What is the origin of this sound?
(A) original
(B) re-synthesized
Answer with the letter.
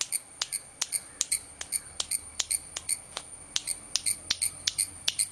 A